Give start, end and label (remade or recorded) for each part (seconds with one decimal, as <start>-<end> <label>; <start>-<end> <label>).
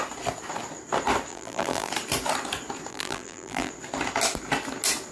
0.0-1.3 recorded; 1.3-1.9 remade; 1.9-2.9 recorded; 2.9-3.7 remade; 3.7-5.1 recorded